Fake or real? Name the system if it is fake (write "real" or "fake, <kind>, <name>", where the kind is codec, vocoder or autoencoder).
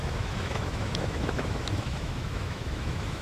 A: fake, autoencoder, DAC-VAE